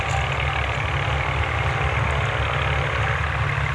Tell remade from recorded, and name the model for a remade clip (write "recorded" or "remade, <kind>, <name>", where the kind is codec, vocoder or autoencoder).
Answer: recorded